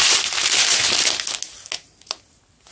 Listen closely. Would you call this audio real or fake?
real